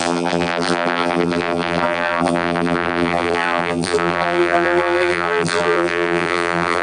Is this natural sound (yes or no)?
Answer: no